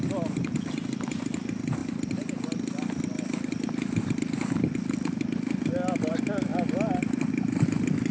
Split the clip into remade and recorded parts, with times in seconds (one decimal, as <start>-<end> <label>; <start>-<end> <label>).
0.0-8.1 recorded